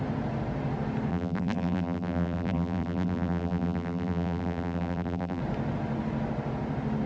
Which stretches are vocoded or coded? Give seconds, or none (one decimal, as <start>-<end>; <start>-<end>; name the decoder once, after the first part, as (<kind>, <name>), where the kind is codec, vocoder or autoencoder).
1.1-5.4 (vocoder, BigVGAN v2)